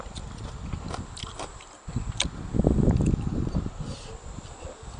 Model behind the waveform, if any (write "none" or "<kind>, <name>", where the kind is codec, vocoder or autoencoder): none